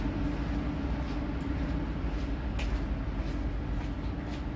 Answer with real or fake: real